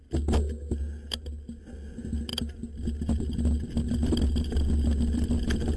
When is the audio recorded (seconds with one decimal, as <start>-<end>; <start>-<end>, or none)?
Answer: 0.0-5.8